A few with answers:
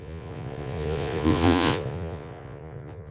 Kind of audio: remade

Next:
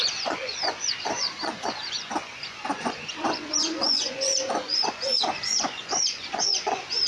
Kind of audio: remade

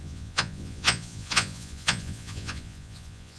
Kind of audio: remade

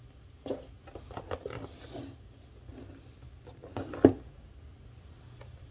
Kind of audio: recorded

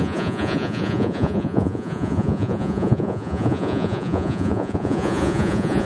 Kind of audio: remade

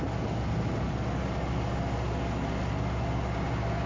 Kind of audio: recorded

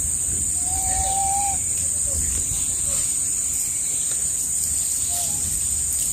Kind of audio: recorded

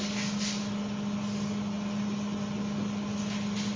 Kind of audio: recorded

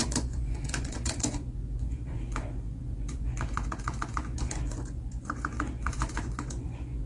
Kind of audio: remade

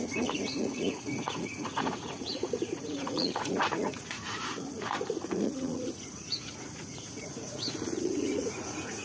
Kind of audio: remade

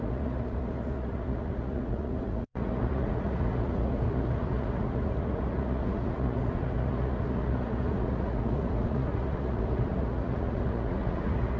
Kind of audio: remade